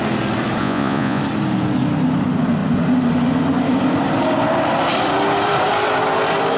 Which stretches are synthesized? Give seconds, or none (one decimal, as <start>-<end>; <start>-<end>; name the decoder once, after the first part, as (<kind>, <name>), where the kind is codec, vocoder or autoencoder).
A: 0.6-1.2 (vocoder, Vocos)